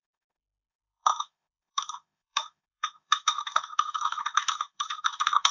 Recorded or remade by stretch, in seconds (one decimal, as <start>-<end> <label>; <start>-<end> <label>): 0.0-5.5 remade